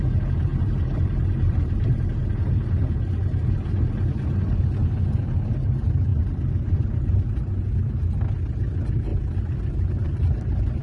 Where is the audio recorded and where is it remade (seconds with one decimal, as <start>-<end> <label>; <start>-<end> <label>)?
0.0-0.5 recorded; 0.5-2.0 remade; 2.0-6.1 recorded; 6.1-7.0 remade; 7.0-9.1 recorded; 9.1-10.8 remade